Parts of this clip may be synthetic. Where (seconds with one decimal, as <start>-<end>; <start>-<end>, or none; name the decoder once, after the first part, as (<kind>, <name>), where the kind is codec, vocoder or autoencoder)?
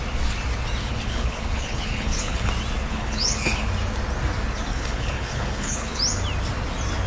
0.8-2.5 (codec, HILCodec); 2.9-3.7; 4.7-6.0